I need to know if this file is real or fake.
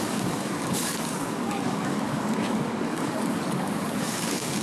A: fake